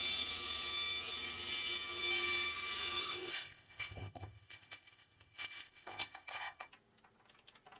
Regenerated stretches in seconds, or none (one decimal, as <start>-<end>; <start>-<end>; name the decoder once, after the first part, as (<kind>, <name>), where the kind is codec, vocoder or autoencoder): 3.0-6.7 (codec, ZipCodec)